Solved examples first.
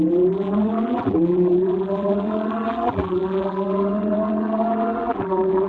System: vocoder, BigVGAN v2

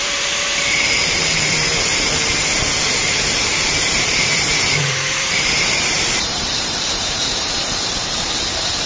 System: vocoder, BigVGAN v2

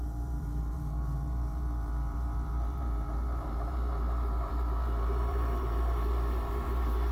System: vocoder, BigVGAN v2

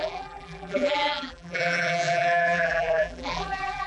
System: vocoder, BigVGAN v2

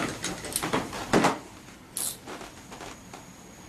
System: none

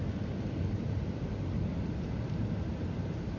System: none